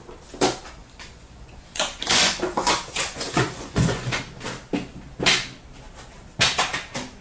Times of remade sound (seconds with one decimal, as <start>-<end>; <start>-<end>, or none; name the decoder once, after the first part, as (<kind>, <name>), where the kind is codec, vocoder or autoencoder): 0.8-4.2 (vocoder, Vocos)